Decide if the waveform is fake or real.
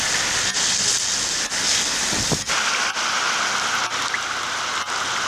real